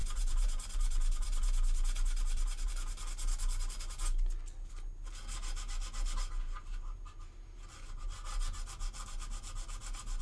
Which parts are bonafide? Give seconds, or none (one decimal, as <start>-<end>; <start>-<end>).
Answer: 2.7-10.2

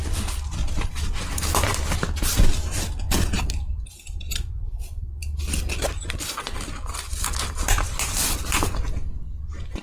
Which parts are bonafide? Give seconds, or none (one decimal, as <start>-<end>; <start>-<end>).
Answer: 0.0-0.6; 1.3-9.8

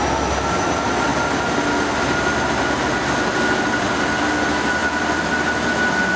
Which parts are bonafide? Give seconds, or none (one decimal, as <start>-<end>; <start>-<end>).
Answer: 0.0-4.8; 5.3-6.2

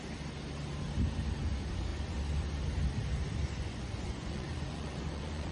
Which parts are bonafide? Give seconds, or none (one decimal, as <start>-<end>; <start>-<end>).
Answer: 0.0-3.4